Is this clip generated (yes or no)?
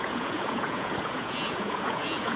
yes